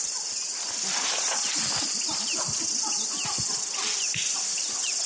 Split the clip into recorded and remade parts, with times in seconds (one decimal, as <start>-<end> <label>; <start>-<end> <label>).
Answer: 0.0-5.1 recorded